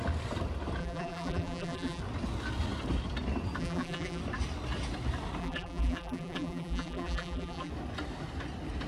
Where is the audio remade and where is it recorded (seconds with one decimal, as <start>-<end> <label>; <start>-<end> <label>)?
0.0-0.8 recorded; 0.8-2.0 remade; 2.0-3.6 recorded; 3.6-4.2 remade; 4.2-5.4 recorded; 5.4-7.7 remade; 7.7-8.9 recorded